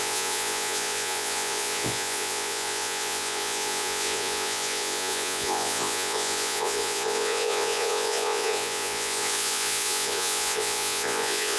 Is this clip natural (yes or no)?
no